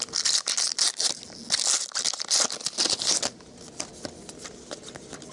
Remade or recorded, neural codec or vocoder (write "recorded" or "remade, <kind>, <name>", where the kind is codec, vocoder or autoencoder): recorded